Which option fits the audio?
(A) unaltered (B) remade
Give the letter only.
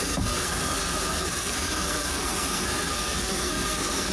B